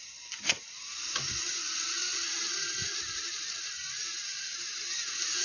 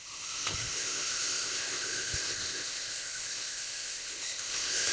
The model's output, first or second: second